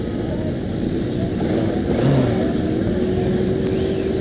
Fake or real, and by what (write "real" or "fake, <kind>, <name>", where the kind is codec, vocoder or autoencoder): real